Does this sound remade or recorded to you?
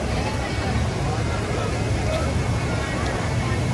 recorded